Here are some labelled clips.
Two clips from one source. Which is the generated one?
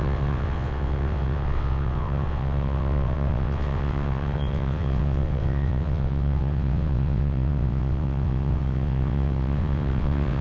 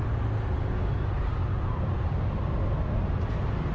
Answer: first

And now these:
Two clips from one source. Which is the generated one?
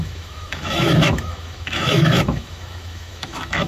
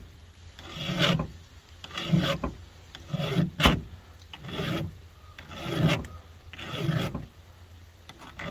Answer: first